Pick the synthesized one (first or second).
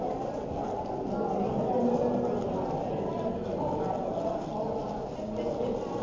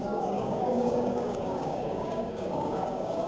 second